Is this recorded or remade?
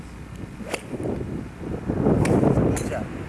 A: recorded